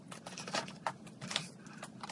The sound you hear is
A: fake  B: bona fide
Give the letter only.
B